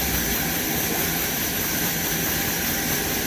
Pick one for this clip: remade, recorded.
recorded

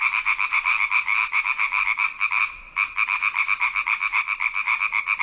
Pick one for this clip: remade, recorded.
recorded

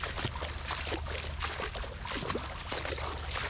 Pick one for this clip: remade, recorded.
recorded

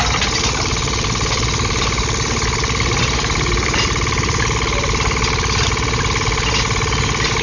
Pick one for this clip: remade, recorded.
recorded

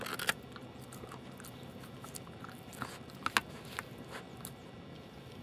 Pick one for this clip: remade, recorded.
recorded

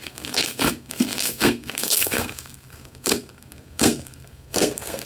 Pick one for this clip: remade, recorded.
remade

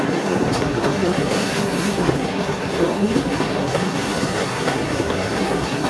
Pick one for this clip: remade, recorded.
remade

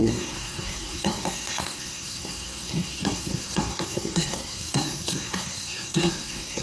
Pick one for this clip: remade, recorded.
remade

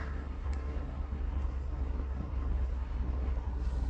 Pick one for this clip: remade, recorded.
remade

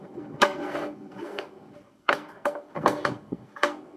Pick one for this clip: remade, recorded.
remade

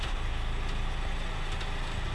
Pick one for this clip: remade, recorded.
recorded